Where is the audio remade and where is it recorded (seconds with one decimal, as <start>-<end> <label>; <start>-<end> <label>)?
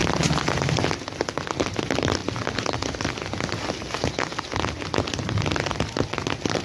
0.0-6.6 recorded